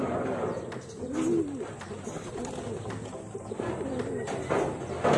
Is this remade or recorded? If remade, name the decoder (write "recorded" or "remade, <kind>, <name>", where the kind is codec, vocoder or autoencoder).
recorded